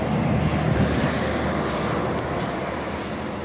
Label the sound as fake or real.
real